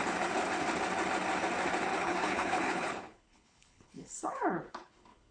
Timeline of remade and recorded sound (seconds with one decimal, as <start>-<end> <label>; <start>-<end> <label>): 0.0-1.9 recorded; 1.9-5.3 remade